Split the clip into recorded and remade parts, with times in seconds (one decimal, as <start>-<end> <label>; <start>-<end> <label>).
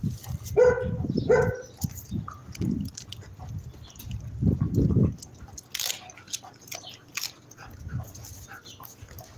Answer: 0.0-9.4 recorded